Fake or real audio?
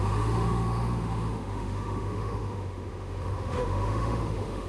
fake